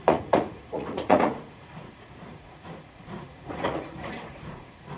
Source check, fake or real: fake